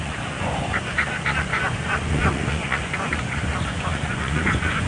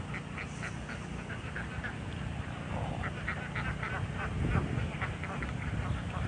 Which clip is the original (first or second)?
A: second